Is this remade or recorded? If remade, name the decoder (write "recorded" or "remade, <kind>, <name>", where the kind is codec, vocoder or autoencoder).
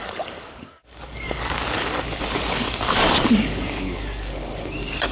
remade, codec, DAC